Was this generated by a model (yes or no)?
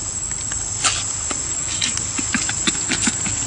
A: no